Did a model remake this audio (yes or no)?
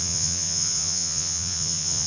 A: yes